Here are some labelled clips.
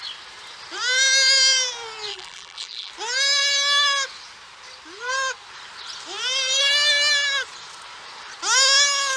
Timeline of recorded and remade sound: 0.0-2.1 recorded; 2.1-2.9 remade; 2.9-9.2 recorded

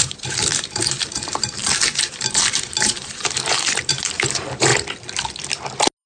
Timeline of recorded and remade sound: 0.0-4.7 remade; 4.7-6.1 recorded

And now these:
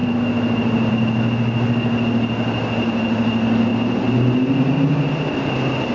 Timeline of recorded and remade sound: 0.0-5.9 recorded

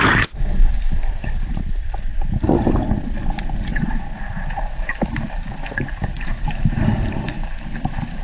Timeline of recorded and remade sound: 0.0-2.1 remade; 2.1-3.2 recorded; 3.2-8.2 remade

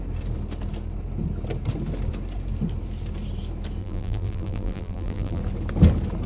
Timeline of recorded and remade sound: 0.0-3.8 recorded; 3.8-5.4 remade; 5.4-6.3 recorded

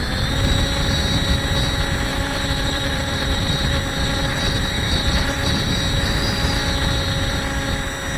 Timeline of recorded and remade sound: 0.0-2.1 recorded; 2.1-3.8 remade; 3.8-4.3 recorded; 4.3-5.7 remade; 5.7-8.2 recorded

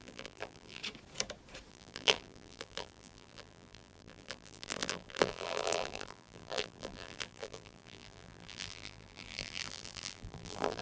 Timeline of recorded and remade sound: 0.0-0.8 remade; 0.8-1.7 recorded; 1.7-10.8 remade